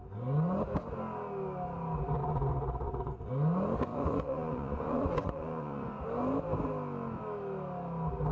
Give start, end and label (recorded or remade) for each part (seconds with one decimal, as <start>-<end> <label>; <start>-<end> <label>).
0.0-2.2 recorded; 2.2-3.3 remade; 3.3-3.9 recorded; 3.9-6.0 remade; 6.0-8.3 recorded